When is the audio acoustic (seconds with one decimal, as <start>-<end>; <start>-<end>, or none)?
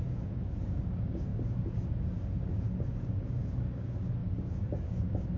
none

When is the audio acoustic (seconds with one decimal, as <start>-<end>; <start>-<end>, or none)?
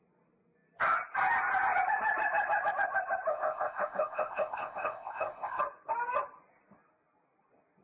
0.0-3.3; 5.6-7.8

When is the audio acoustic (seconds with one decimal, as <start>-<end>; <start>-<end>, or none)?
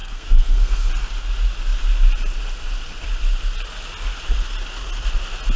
0.9-5.6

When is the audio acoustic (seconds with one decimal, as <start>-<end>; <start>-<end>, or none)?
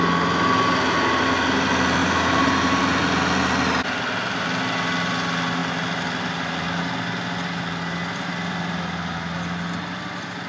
0.0-2.0; 2.8-10.5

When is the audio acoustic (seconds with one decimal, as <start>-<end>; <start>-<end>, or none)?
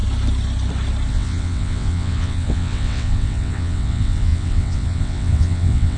0.0-1.1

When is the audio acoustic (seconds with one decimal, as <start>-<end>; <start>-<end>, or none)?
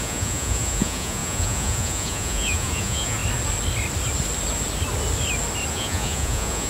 3.2-5.7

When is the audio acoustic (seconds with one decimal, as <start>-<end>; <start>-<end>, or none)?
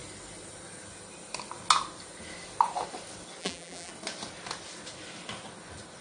0.0-3.4; 3.9-6.0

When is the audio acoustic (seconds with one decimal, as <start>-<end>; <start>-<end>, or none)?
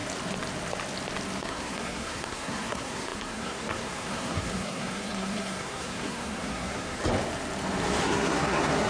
0.0-1.4; 7.0-8.0